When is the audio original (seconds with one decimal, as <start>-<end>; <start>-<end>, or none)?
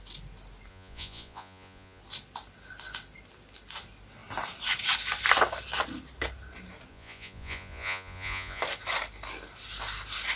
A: 0.0-0.7; 2.0-6.9; 8.6-10.4